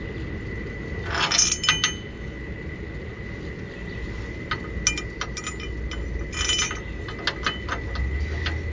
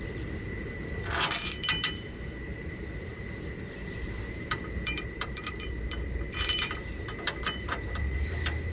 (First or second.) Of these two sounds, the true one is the first